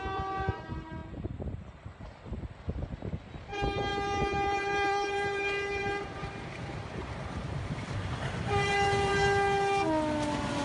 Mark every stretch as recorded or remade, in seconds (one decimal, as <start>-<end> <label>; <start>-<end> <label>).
0.0-3.9 recorded; 3.9-9.1 remade; 9.1-10.6 recorded